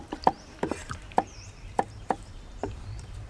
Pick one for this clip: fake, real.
fake